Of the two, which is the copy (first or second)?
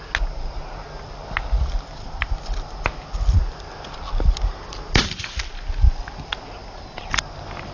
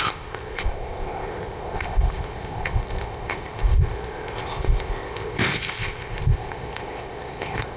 second